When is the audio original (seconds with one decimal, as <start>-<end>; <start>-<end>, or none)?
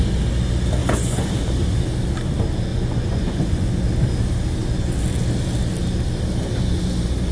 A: 0.0-0.8; 1.3-2.7; 3.7-7.3